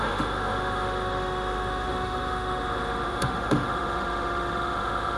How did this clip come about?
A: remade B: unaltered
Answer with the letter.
A